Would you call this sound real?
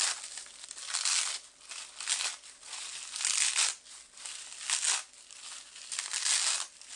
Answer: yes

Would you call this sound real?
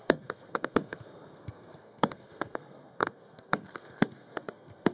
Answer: no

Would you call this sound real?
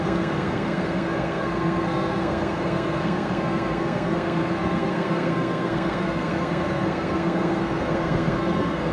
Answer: no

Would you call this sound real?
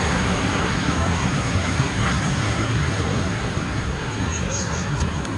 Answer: no